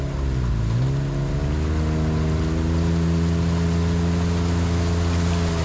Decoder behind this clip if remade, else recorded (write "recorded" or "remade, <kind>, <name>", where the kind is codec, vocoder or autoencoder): recorded